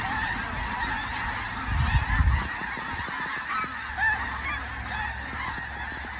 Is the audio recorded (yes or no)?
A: yes